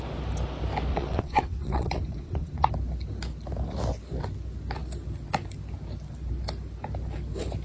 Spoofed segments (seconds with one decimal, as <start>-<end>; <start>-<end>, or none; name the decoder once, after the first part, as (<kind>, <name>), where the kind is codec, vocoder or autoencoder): 0.9-2.7 (vocoder, WaveNeXt)